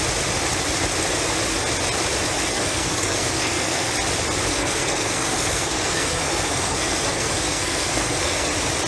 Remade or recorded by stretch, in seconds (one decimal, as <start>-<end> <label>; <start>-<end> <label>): 0.0-2.5 recorded; 2.5-3.9 remade; 3.9-4.5 recorded; 4.5-8.5 remade; 8.5-8.9 recorded